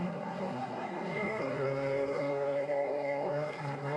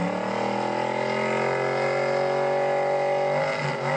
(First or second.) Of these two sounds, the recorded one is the second